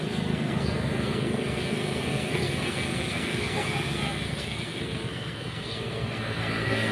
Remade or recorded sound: remade